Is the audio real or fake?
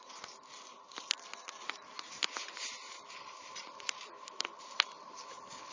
real